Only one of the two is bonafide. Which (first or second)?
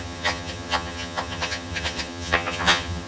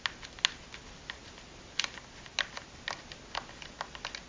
second